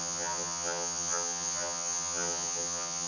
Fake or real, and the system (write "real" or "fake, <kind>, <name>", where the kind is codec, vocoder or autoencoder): fake, vocoder, HiFi-GAN